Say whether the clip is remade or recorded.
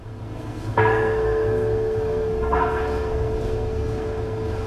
remade